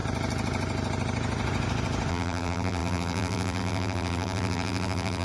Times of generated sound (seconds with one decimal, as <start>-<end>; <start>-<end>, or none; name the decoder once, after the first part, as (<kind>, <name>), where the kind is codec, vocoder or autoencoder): 2.1-5.2 (vocoder, BigVGAN v2)